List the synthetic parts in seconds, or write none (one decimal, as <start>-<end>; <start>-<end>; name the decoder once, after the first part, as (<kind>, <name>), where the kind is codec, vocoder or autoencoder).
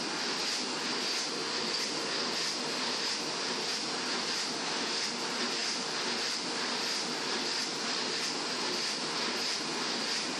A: none